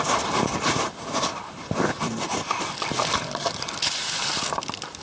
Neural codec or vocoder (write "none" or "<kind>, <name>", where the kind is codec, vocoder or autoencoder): none